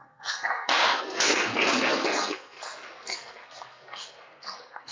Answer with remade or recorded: remade